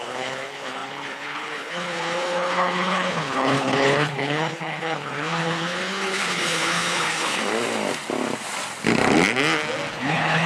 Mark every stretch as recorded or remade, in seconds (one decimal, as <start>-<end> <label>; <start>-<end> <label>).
0.0-7.4 remade; 7.4-9.9 recorded; 9.9-10.5 remade